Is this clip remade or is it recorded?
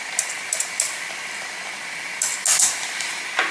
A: recorded